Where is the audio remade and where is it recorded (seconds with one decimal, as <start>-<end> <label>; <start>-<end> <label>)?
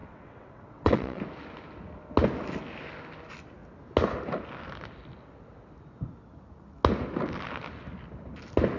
0.0-1.2 remade; 1.2-8.8 recorded